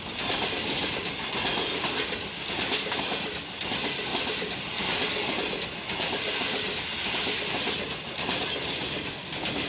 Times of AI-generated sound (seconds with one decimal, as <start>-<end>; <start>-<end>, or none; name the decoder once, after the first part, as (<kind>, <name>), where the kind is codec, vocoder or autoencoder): none